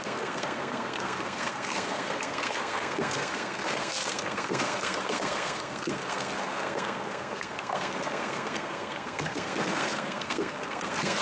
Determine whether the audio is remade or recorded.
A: remade